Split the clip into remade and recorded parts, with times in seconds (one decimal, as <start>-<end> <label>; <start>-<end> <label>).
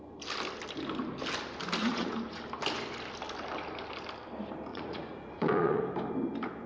0.0-1.8 recorded; 1.8-2.4 remade; 2.4-4.7 recorded; 4.7-5.8 remade; 5.8-6.7 recorded